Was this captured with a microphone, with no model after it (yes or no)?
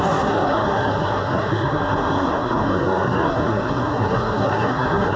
no